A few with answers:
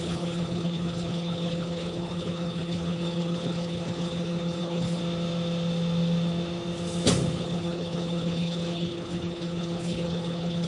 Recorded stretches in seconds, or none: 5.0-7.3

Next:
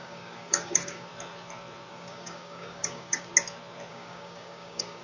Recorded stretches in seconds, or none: 1.1-1.9; 3.3-3.9

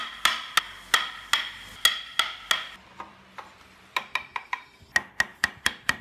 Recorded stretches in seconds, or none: 0.0-5.3

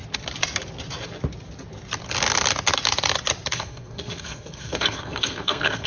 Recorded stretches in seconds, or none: 0.0-3.5

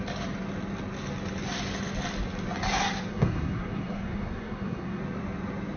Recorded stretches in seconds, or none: 0.0-3.1; 5.0-5.8